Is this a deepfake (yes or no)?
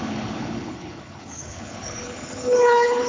yes